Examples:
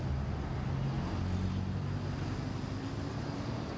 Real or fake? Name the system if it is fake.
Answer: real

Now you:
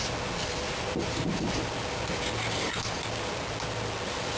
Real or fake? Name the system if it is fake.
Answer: real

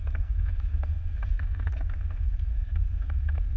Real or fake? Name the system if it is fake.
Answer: fake, codec, SNAC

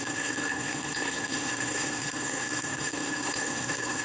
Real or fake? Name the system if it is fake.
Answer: fake, codec, SNAC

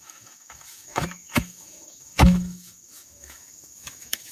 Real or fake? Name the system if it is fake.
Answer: fake, autoencoder, DAC-VAE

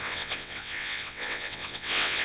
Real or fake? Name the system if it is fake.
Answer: fake, vocoder, WaveNeXt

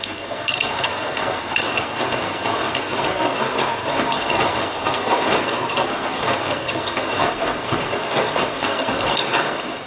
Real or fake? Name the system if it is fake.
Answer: fake, codec, SNAC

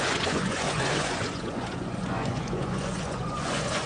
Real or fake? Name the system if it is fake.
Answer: fake, vocoder, Vocos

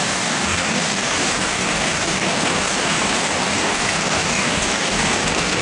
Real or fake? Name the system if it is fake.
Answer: fake, codec, DAC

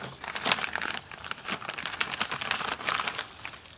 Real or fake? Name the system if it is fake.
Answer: real